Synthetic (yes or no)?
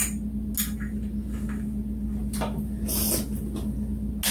no